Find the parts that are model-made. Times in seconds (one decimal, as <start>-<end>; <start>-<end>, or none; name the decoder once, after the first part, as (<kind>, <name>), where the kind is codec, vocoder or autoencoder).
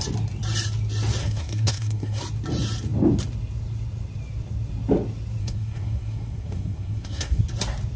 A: 1.2-2.2 (codec, SNAC); 5.4-7.4